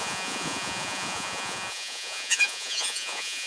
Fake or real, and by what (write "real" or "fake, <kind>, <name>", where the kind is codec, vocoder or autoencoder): fake, vocoder, Vocos